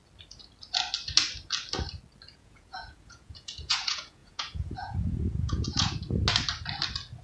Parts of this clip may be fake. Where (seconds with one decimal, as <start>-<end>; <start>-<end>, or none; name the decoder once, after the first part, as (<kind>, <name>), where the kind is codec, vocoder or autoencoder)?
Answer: 2.3-6.0 (vocoder, Vocos)